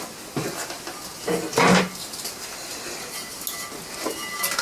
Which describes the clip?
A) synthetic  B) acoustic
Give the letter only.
B